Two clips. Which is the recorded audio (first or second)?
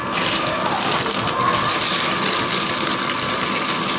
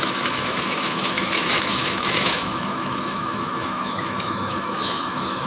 first